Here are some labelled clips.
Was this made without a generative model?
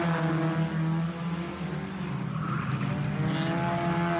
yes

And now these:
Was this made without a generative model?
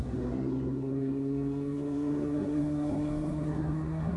no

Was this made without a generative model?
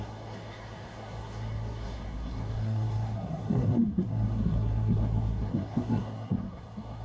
no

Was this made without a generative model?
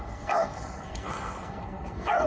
no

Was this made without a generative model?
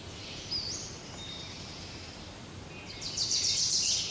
yes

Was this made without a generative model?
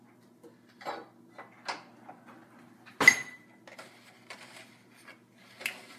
yes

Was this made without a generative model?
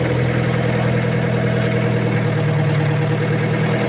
yes